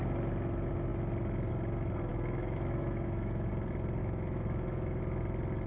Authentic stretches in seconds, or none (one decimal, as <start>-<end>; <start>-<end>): 0.0-2.1; 3.5-4.0; 5.0-5.7